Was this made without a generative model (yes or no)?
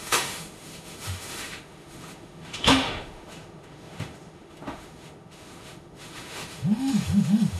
no